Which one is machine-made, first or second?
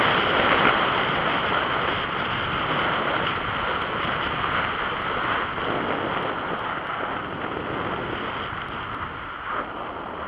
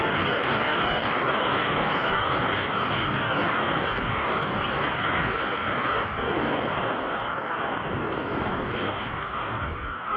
second